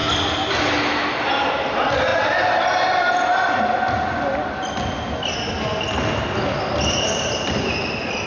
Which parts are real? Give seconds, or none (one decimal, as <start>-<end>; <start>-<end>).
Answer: 0.0-8.3